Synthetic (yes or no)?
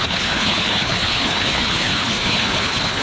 yes